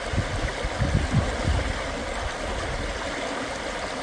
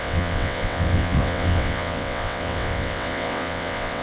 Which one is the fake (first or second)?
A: second